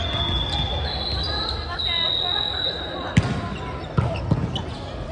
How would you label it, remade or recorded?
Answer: recorded